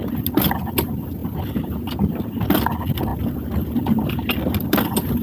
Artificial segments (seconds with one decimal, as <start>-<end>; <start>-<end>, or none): none